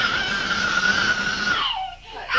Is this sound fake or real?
fake